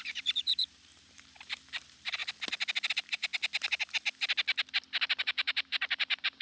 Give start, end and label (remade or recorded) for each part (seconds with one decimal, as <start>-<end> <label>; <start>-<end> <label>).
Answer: 0.0-2.2 remade; 2.2-2.9 recorded; 2.9-3.3 remade; 3.3-5.2 recorded; 5.2-6.4 remade